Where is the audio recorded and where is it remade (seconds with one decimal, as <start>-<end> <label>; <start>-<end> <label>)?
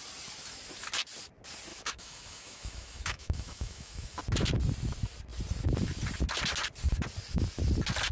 0.0-1.7 recorded; 1.7-4.2 remade; 4.2-8.1 recorded